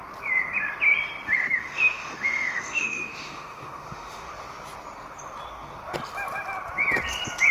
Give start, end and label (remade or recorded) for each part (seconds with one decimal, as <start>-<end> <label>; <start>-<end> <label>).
0.0-1.6 recorded; 1.6-4.3 remade; 4.3-7.5 recorded